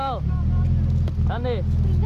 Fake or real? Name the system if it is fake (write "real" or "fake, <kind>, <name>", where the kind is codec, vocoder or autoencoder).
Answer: real